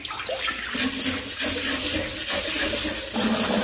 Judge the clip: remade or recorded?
recorded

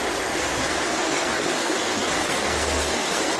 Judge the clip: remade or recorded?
remade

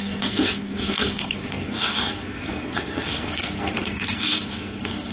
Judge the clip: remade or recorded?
remade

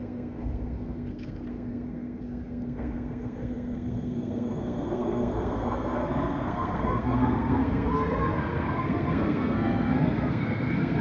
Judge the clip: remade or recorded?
remade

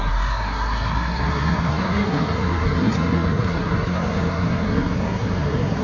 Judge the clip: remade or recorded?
remade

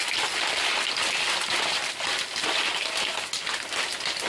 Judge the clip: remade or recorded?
recorded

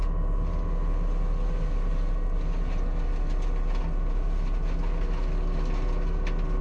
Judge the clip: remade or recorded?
recorded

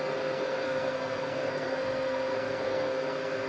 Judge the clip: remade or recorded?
remade